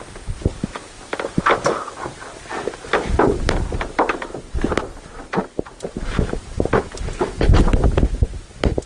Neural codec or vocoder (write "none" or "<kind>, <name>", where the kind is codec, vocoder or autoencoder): none